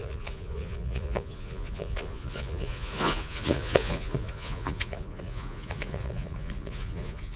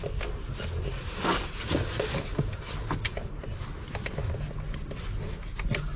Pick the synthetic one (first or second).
first